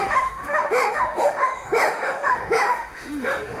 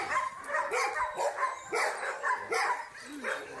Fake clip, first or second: first